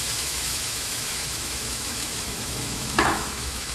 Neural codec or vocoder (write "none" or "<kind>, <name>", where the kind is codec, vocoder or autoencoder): autoencoder, DAC-VAE